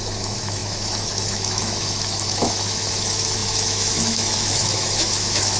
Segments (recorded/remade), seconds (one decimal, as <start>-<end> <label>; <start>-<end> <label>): 0.0-5.6 remade